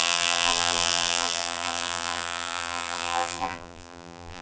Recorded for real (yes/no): no